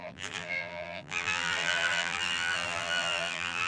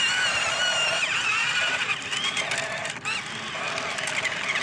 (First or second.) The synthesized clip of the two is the first